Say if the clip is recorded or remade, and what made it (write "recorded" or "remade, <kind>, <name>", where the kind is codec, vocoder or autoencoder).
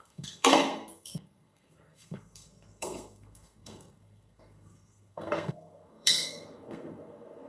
remade, codec, SNAC